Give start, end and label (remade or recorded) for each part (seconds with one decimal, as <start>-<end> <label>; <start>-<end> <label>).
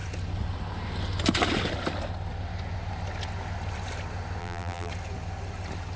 0.0-4.4 recorded; 4.4-4.9 remade; 4.9-6.0 recorded